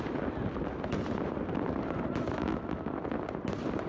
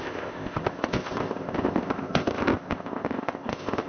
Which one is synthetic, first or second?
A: second